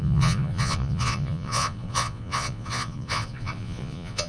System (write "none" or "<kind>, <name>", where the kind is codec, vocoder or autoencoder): vocoder, Vocos